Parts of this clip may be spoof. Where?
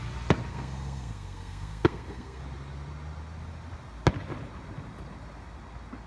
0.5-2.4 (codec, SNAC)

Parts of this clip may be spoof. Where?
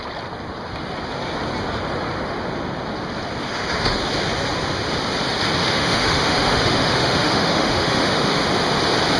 5.6-8.4 (autoencoder, DAC-VAE)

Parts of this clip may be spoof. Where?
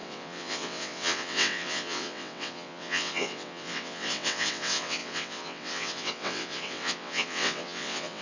0.0-8.2 (vocoder, WaveNeXt)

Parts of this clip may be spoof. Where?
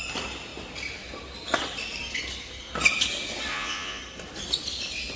3.5-4.0 (vocoder, Vocos)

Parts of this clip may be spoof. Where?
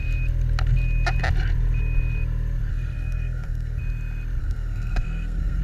2.7-3.8 (codec, SNAC); 4.4-5.6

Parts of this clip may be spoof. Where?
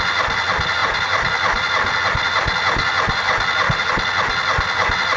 none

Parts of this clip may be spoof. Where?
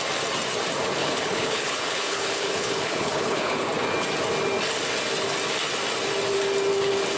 1.0-3.7 (codec, HILCodec)